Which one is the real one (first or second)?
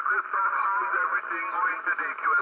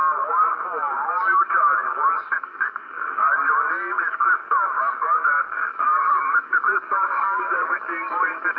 first